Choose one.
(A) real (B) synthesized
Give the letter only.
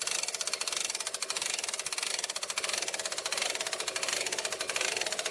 A